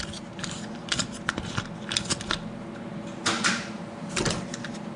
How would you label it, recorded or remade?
recorded